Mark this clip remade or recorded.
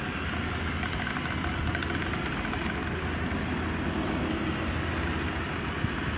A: recorded